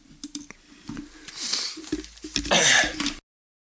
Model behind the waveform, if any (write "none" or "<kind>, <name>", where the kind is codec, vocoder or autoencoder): none